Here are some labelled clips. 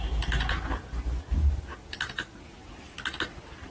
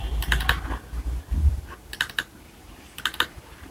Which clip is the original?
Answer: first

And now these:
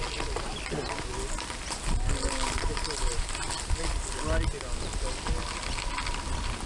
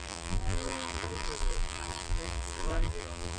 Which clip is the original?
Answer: first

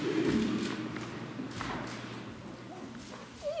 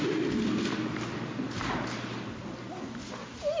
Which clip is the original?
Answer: first